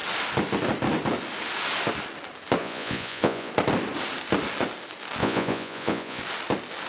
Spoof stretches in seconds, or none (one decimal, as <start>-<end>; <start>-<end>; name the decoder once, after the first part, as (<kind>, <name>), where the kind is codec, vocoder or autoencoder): 2.6-3.5 (vocoder, Vocos); 5.2-6.2